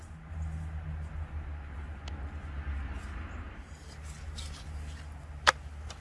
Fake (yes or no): no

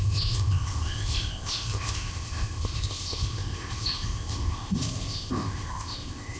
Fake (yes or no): yes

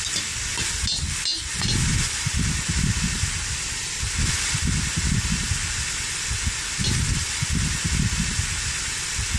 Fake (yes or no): no